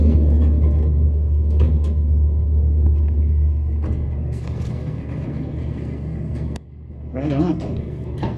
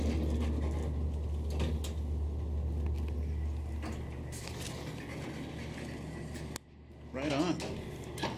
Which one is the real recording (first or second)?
second